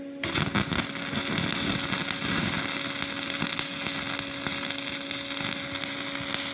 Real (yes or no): yes